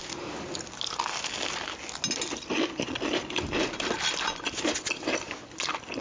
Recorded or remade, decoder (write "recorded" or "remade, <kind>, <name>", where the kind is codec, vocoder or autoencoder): recorded